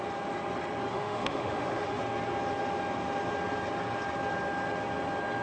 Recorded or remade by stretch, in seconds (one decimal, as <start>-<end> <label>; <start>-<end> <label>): 0.0-0.9 recorded; 0.9-2.0 remade; 2.0-5.4 recorded